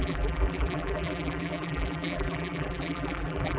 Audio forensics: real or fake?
fake